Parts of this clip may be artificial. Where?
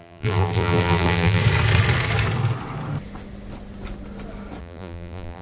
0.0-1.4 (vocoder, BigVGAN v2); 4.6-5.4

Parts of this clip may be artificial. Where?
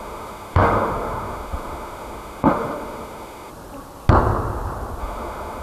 0.0-3.5 (autoencoder, DAC-VAE); 5.0-5.6